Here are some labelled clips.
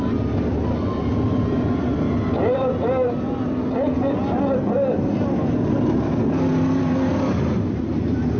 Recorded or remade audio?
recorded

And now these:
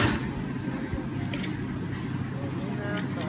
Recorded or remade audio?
recorded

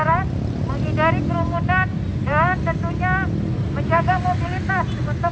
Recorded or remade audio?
recorded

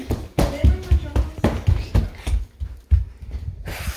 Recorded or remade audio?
recorded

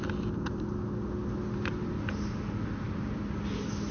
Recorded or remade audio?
recorded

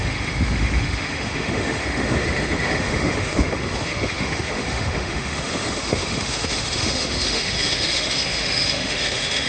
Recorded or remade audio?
remade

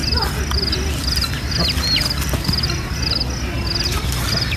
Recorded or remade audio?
recorded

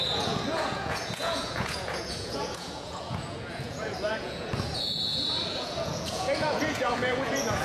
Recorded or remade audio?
remade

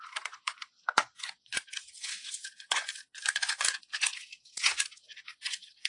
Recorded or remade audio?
remade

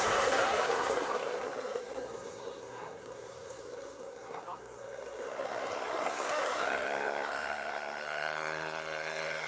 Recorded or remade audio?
remade